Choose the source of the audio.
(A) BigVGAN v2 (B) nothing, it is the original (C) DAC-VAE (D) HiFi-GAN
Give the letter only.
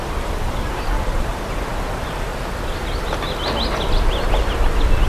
B